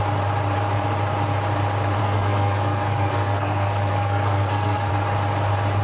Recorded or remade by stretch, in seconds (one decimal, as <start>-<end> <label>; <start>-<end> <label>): 0.0-2.0 recorded; 2.0-4.9 remade; 4.9-5.8 recorded